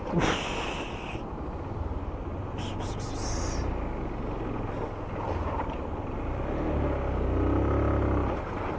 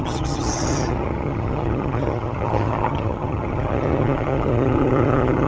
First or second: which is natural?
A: first